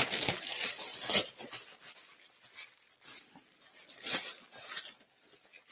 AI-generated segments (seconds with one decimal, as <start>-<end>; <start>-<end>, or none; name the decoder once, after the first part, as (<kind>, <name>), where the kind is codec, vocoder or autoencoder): none